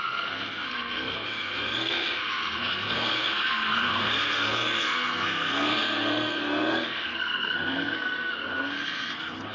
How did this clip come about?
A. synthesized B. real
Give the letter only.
A